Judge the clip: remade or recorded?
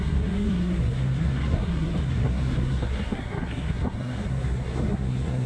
remade